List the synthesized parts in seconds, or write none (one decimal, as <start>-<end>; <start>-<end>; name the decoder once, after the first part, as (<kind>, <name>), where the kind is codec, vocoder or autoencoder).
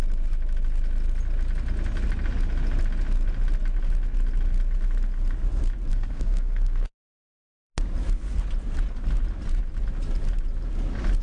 5.9-7.7 (codec, SNAC)